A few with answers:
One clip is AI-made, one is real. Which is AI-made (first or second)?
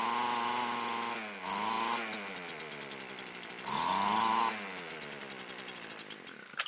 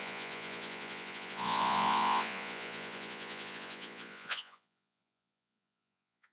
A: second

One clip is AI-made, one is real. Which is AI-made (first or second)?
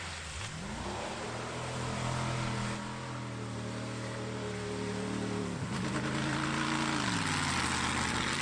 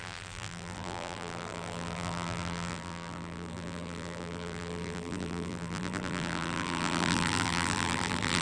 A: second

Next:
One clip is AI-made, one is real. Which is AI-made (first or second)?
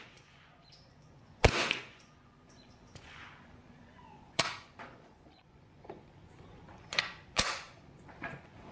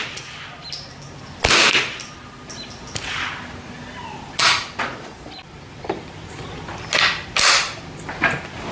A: first